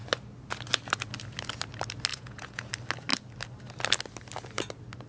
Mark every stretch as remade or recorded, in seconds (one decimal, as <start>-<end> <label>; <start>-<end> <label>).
0.0-2.1 recorded; 2.1-2.7 remade; 2.7-5.1 recorded